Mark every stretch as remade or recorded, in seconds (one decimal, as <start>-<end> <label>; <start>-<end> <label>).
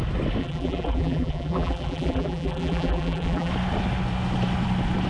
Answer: 0.0-0.4 recorded; 0.4-3.5 remade; 3.5-5.1 recorded